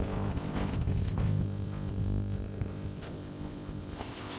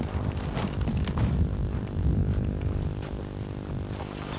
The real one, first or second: second